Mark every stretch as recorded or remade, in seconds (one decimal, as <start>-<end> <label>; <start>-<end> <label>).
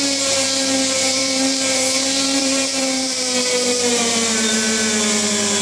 0.0-4.5 remade; 4.5-5.6 recorded